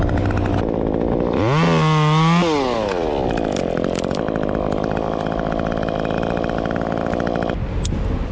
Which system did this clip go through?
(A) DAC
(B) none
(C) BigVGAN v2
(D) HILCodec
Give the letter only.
B